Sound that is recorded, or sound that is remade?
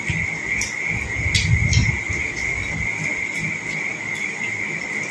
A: recorded